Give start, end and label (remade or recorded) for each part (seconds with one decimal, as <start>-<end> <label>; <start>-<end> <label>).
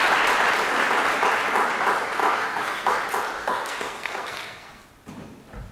0.0-2.2 recorded; 2.2-3.0 remade; 3.0-3.4 recorded; 3.4-4.9 remade; 4.9-5.7 recorded